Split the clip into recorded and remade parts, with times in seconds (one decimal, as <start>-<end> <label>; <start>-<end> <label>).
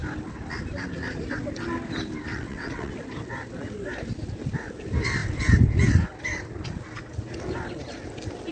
0.0-2.3 recorded; 2.3-2.9 remade; 2.9-8.5 recorded